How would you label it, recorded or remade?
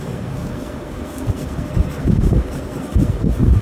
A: remade